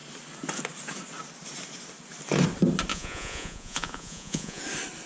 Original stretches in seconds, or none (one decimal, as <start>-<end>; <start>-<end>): 0.0-2.9; 4.6-5.1